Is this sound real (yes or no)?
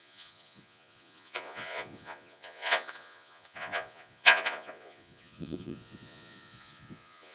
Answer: no